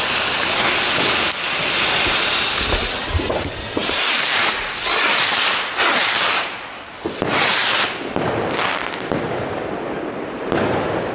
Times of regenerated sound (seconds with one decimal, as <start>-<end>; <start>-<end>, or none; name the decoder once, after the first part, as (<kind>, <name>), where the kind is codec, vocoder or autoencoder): 3.8-4.5 (vocoder, BigVGAN v2)